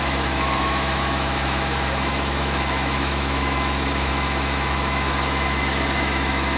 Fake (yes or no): yes